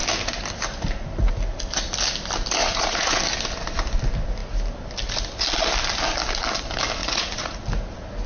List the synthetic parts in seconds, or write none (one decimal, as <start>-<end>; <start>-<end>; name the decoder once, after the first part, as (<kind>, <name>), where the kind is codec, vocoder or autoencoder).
2.6-3.2 (vocoder, Vocos); 7.0-7.6